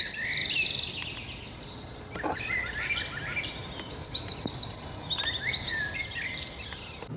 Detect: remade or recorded recorded